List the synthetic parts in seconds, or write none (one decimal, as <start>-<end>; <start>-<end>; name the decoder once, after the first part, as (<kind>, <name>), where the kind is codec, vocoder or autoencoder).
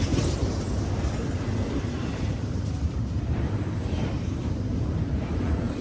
0.0-0.4 (vocoder, BigVGAN v2); 2.2-5.8